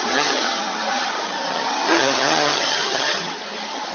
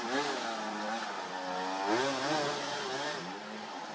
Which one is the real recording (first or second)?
second